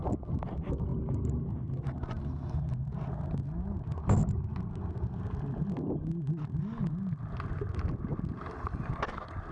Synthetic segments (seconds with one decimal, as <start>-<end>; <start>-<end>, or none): none